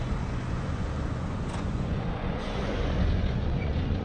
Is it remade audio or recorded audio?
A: remade